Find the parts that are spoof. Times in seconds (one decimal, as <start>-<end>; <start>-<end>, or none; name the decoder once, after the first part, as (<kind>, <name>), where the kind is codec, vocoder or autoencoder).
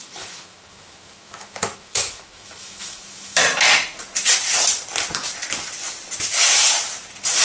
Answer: 0.0-3.4 (autoencoder, DAC-VAE)